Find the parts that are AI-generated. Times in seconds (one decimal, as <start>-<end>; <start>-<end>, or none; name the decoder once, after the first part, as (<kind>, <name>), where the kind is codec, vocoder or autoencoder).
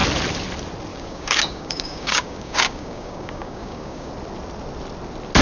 0.9-4.1 (codec, DAC)